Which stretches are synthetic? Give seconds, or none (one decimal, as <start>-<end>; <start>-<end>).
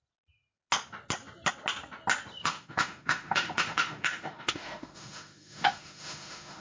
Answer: 2.4-6.6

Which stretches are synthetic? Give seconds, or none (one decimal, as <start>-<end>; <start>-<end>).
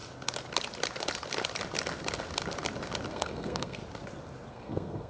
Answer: 3.1-3.8; 4.5-5.1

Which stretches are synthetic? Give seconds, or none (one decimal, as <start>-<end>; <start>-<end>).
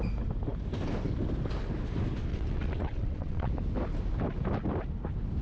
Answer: 2.3-3.5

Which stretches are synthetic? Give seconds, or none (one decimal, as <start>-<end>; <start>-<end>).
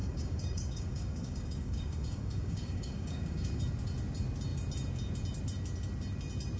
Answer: 0.0-3.6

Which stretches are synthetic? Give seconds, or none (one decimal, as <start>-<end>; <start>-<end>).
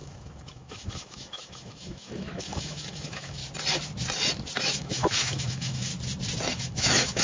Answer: 0.0-3.4; 4.6-5.9; 6.5-7.2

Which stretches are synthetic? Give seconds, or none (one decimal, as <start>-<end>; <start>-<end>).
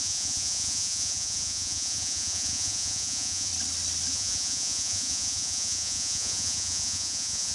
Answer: 0.0-3.5; 4.1-7.5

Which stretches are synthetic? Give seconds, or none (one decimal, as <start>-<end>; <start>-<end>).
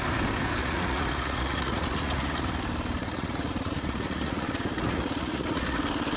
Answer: 0.6-2.4; 3.0-5.8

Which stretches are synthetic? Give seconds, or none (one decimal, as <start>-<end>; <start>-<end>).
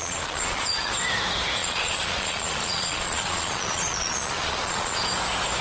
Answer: 0.0-0.9; 1.6-5.0